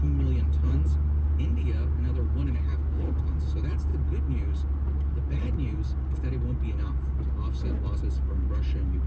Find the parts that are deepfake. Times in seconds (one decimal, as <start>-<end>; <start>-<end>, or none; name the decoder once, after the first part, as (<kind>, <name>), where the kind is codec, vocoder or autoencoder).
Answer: none